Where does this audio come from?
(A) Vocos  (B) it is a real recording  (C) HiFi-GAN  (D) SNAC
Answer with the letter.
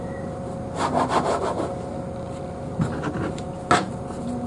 B